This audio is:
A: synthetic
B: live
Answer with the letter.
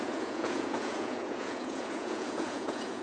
A